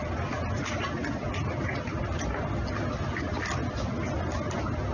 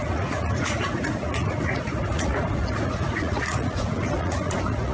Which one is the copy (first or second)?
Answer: second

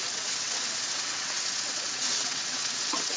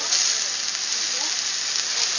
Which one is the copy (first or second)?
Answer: first